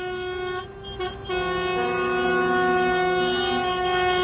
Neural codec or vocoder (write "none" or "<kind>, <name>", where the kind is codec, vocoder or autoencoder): none